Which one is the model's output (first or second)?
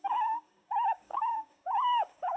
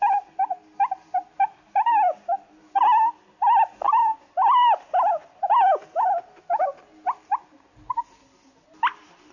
first